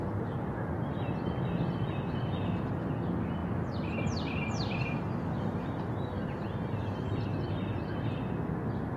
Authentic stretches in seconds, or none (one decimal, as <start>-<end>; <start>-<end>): 0.0-9.0